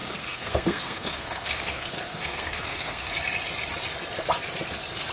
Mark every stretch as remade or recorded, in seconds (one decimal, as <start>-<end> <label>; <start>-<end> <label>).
0.0-3.1 remade; 3.1-5.1 recorded